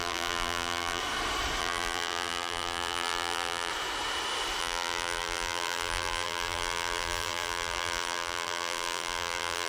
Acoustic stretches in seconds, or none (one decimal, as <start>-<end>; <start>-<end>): 1.0-1.6; 3.7-4.6